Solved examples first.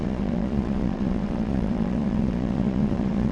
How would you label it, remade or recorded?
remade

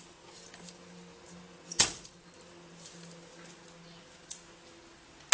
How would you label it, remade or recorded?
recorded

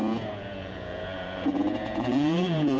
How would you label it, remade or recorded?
remade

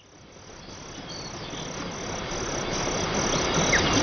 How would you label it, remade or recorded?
recorded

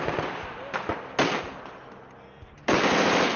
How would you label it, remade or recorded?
recorded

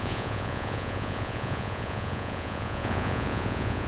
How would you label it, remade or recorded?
remade